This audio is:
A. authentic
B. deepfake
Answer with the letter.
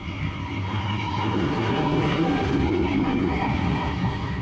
B